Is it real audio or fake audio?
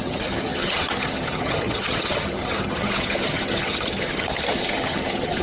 fake